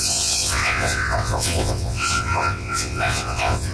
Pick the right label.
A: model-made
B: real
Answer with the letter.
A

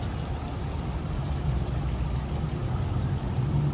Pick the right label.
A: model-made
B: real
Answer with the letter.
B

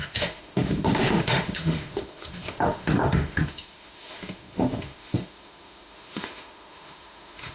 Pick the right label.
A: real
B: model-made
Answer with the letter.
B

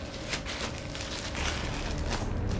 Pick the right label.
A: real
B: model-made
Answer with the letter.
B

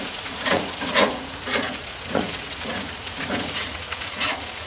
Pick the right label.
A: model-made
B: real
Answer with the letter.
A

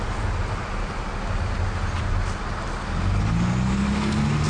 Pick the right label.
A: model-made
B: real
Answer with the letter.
B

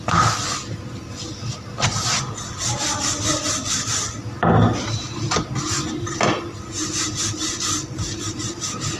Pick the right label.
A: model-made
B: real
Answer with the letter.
B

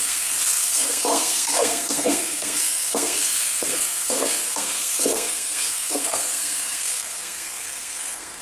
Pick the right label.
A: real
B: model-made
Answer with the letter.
B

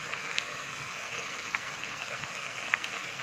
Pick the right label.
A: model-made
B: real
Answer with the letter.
A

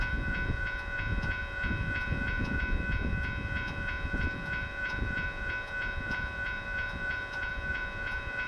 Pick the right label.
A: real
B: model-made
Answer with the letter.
B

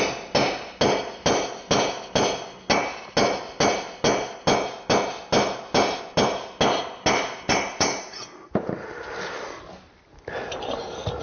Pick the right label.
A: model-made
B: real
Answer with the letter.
B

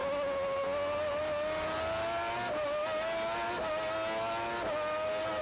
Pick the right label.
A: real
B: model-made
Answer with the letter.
A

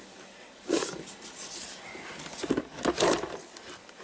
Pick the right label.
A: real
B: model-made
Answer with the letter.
A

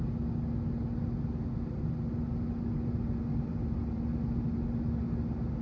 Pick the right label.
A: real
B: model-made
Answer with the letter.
A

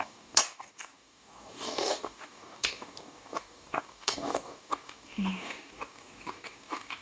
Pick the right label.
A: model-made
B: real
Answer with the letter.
A